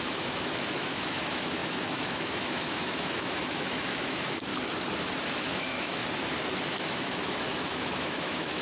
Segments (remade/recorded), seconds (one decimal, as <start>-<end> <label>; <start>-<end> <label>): 0.0-4.5 remade; 4.5-5.2 recorded; 5.2-6.0 remade; 6.0-6.7 recorded; 6.7-8.6 remade

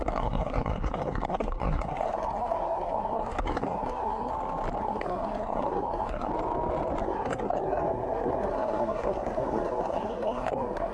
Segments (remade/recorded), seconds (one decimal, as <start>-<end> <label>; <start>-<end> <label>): 0.0-4.3 remade; 4.3-4.8 recorded; 4.8-6.3 remade; 6.3-7.0 recorded; 7.0-10.9 remade

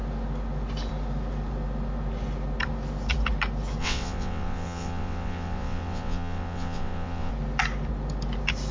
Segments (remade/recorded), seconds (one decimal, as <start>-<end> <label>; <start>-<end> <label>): 0.0-3.8 recorded; 3.8-7.3 remade; 7.3-8.7 recorded